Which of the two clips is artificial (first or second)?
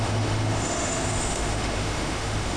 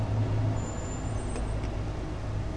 first